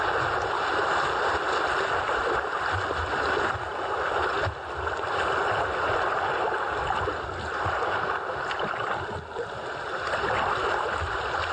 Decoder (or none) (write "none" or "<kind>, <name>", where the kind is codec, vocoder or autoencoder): none